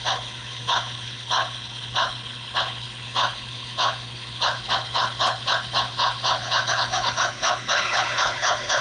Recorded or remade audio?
remade